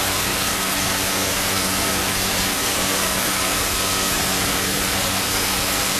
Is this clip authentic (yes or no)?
no